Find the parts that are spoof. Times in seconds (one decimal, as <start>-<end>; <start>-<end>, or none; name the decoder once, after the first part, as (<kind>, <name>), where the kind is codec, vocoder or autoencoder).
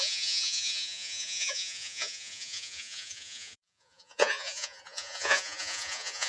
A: 0.0-6.3 (vocoder, Vocos)